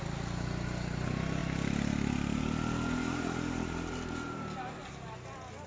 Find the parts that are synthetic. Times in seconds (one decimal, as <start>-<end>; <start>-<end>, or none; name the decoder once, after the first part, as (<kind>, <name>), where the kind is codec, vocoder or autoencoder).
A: none